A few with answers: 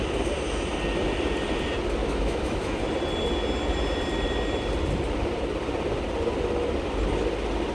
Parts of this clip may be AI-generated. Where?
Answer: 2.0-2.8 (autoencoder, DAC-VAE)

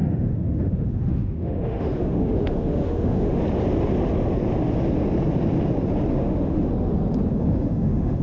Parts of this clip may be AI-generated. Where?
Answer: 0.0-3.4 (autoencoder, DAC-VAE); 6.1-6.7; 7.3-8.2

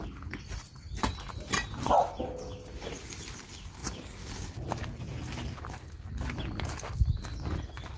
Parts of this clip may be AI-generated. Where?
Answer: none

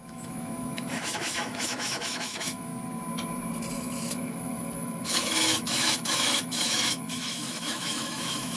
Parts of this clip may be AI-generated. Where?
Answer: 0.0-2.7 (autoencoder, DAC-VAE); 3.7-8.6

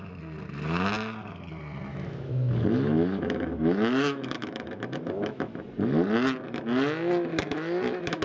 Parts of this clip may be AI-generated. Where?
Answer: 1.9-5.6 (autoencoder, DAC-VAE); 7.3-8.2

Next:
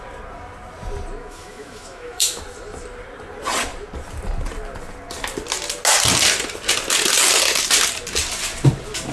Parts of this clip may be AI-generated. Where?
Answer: 1.2-2.4 (autoencoder, DAC-VAE)

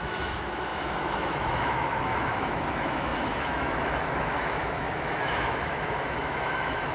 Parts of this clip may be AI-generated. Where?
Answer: 0.0-6.9 (autoencoder, DAC-VAE)